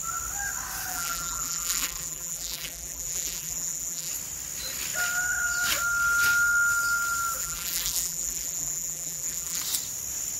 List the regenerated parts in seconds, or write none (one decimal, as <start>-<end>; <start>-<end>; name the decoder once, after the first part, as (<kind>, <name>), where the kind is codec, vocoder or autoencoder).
0.9-4.1 (vocoder, BigVGAN v2); 7.4-9.6